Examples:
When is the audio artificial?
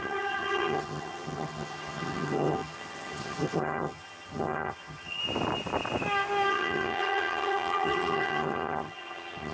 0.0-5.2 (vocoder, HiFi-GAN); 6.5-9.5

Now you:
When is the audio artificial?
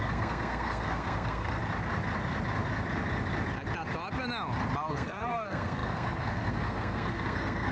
0.0-1.6 (codec, SNAC); 4.9-7.7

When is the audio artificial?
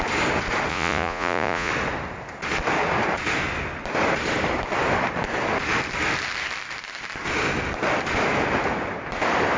0.7-1.7 (vocoder, Vocos)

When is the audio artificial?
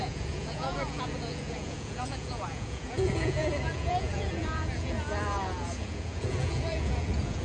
0.0-7.4 (vocoder, Vocos)